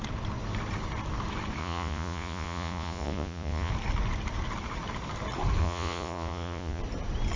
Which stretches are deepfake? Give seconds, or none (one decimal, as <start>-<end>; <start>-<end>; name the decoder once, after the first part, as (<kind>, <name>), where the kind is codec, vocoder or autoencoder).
1.6-3.7 (vocoder, Vocos); 5.6-6.8